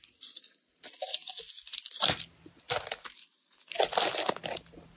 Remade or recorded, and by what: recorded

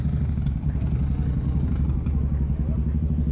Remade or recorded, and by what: recorded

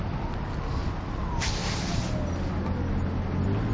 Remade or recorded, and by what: recorded